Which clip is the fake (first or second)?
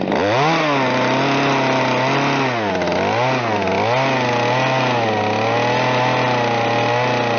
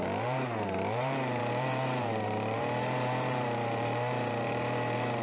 second